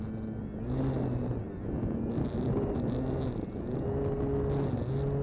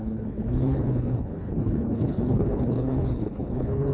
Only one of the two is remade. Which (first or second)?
second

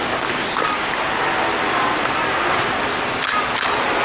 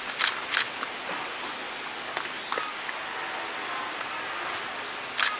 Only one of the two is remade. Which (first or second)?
first